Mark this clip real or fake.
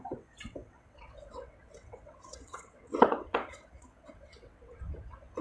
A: fake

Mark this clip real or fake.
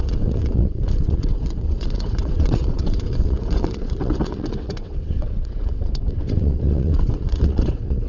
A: fake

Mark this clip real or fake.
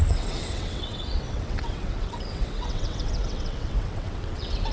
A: fake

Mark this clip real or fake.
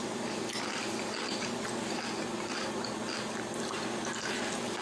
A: real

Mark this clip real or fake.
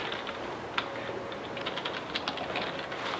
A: real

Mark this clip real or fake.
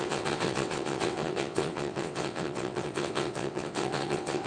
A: fake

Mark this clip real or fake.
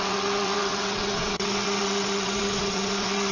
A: fake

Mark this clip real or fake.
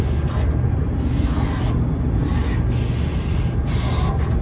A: real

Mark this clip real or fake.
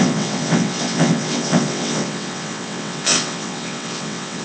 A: fake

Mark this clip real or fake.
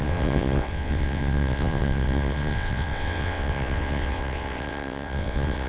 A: fake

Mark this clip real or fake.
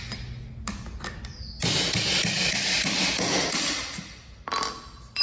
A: real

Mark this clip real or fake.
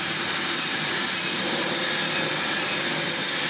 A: real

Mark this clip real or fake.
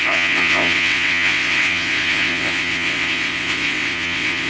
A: fake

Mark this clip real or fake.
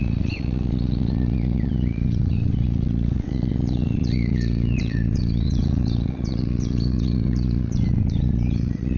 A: fake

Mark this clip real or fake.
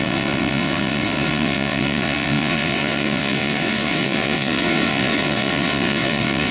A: fake